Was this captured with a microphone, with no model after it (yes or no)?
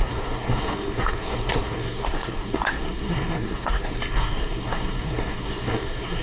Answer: no